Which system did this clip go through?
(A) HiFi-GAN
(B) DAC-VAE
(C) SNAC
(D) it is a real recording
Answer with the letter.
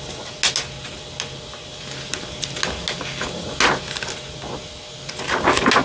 D